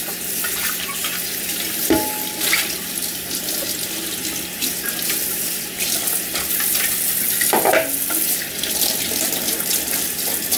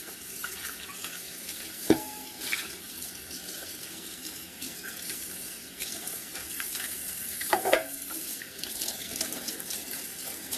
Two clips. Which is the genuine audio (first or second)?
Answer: first